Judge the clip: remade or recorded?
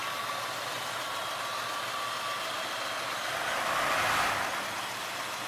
recorded